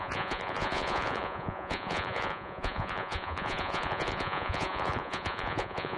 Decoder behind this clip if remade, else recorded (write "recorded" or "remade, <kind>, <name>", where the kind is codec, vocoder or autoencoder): remade, vocoder, Vocos